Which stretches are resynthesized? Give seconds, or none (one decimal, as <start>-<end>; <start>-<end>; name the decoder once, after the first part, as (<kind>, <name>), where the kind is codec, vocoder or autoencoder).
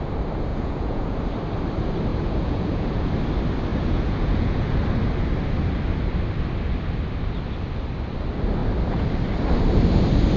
0.5-1.1 (vocoder, Vocos); 2.1-3.1; 3.7-4.8